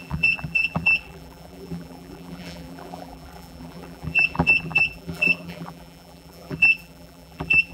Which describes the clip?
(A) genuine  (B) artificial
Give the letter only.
B